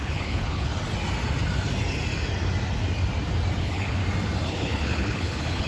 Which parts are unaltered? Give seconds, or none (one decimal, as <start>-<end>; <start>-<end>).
0.7-3.6; 4.0-4.5